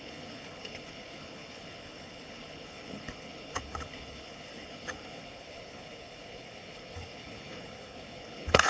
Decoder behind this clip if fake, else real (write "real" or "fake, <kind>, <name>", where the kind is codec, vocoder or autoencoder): fake, codec, HILCodec